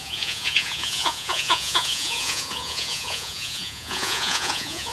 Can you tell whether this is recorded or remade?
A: remade